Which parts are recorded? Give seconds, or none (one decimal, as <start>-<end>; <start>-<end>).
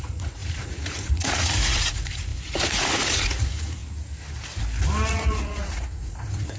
3.8-5.1